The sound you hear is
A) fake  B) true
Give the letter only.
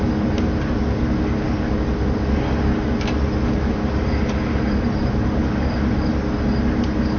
B